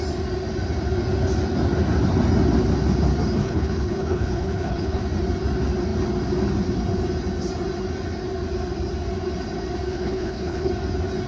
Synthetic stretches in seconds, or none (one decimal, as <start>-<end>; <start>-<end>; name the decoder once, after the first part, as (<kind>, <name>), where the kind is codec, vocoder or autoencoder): 3.4-5.0 (codec, HILCodec); 9.9-10.7